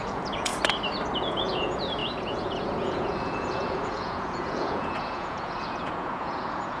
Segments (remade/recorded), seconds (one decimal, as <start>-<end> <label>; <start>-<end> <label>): 0.0-0.5 remade; 0.5-1.2 recorded; 1.2-6.8 remade